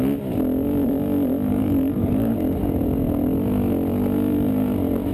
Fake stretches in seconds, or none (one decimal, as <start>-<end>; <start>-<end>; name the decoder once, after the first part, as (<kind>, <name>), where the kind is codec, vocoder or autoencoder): 1.5-2.3 (codec, DAC)